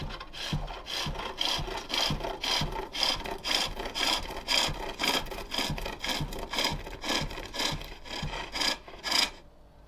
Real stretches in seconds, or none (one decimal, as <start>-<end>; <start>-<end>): 0.0-2.9; 4.3-9.9